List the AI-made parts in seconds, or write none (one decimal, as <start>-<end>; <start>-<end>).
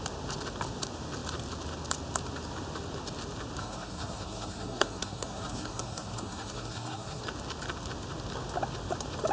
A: 3.6-7.2